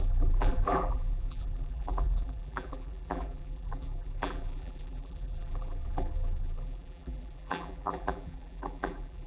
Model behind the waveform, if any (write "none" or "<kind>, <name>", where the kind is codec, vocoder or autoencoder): vocoder, BigVGAN v2